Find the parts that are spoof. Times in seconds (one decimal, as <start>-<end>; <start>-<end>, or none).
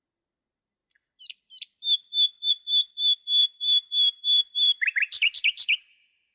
3.4-6.3